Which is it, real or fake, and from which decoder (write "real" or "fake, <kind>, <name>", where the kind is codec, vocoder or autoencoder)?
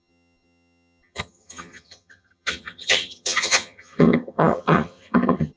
fake, vocoder, HiFi-GAN